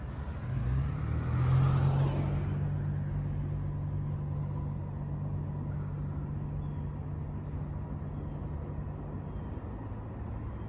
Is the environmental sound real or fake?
real